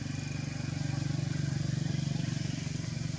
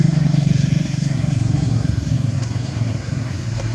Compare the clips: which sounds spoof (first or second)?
second